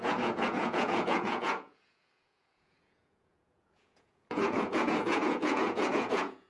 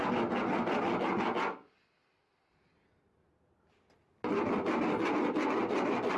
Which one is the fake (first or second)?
first